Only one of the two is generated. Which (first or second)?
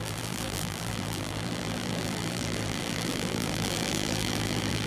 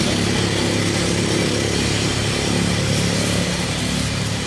first